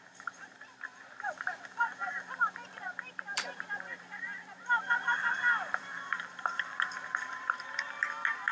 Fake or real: fake